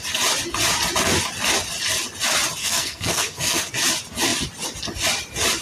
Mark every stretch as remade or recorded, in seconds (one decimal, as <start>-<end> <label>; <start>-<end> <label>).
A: 0.0-2.6 recorded; 2.6-3.7 remade; 3.7-5.6 recorded